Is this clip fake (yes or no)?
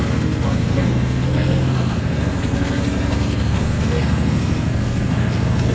yes